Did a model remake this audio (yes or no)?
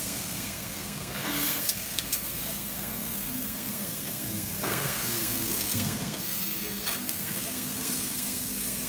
yes